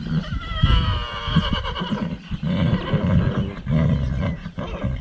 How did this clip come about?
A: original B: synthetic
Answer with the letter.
A